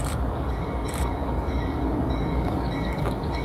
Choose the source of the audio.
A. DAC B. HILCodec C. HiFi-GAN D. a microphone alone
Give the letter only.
A